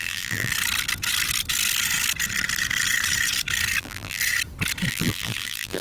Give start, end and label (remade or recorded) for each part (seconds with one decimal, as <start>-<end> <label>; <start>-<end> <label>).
0.0-0.5 remade; 0.5-3.8 recorded; 3.8-4.2 remade; 4.2-4.9 recorded; 4.9-5.8 remade